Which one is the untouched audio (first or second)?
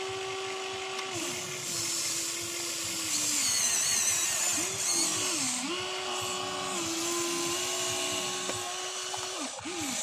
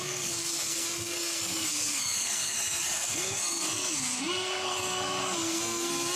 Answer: first